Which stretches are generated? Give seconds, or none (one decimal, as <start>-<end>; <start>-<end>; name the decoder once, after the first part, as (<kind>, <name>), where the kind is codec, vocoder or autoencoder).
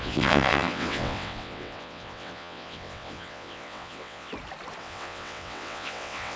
0.0-4.3 (vocoder, WaveNeXt); 4.8-6.4